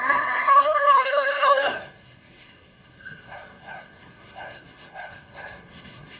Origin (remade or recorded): remade